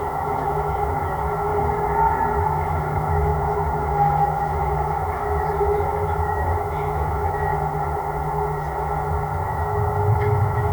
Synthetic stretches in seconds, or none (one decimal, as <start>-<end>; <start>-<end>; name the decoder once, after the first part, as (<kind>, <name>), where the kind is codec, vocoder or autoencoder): 0.0-1.5 (autoencoder, DAC-VAE); 2.4-7.5; 9.5-10.7